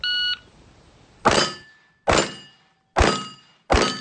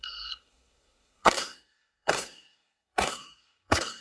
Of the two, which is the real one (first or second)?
first